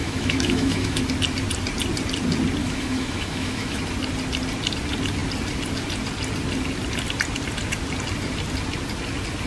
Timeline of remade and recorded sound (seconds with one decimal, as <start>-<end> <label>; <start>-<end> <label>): 0.0-1.0 remade; 1.0-2.6 recorded; 2.6-3.8 remade; 3.8-9.5 recorded